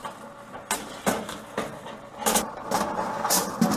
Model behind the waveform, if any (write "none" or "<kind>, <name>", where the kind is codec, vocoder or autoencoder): none